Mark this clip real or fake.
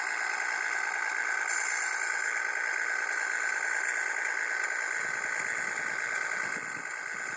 real